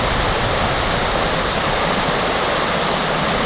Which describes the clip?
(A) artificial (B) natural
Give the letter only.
B